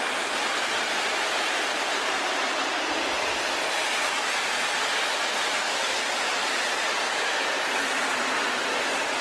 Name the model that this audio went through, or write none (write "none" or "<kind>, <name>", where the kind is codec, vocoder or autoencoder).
none